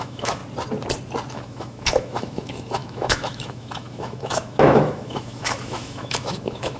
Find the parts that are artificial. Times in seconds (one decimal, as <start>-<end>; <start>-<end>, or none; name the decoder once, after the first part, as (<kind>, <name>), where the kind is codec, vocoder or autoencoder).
0.0-0.4 (autoencoder, DAC-VAE); 1.3-6.8